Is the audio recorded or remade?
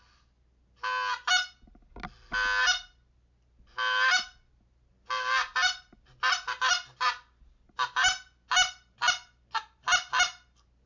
recorded